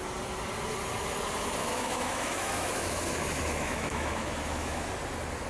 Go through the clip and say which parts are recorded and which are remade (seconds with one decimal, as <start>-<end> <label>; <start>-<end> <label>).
0.0-1.6 recorded; 1.6-4.9 remade; 4.9-5.5 recorded